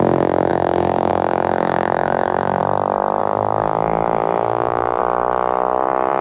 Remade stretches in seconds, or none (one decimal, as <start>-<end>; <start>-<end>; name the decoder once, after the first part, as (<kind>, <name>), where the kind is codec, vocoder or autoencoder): 0.0-2.6 (codec, DAC); 3.2-5.0